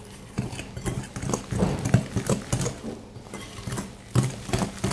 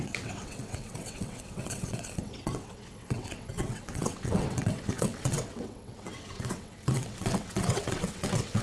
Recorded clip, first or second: first